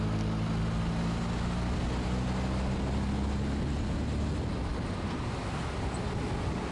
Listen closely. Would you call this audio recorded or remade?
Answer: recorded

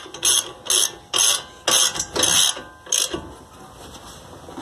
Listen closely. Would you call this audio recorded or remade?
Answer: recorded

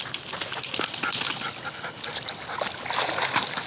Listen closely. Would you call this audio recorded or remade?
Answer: recorded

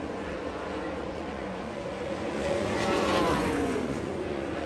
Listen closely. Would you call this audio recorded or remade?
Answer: remade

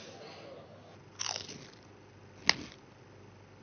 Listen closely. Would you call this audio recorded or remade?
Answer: recorded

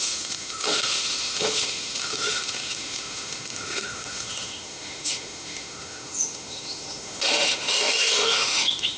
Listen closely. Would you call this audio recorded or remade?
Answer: remade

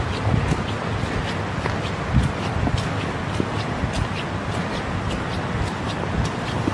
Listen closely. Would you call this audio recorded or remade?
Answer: recorded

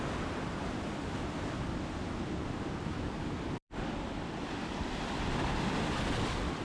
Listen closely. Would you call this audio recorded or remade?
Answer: remade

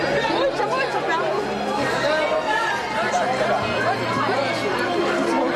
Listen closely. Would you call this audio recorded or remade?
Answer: recorded